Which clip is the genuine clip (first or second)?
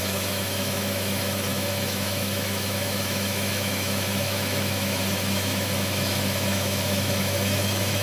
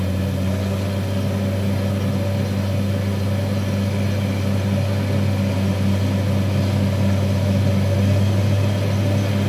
second